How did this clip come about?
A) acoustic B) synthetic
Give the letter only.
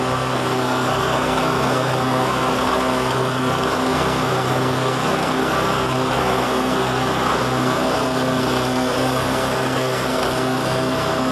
B